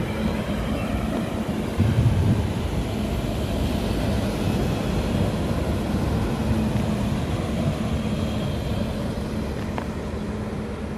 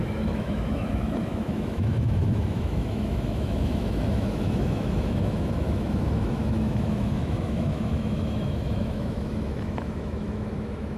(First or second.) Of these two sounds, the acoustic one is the first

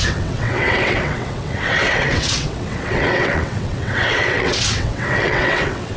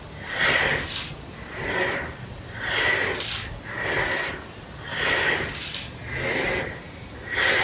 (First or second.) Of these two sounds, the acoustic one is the second